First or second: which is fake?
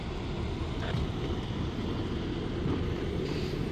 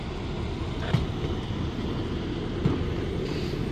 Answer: first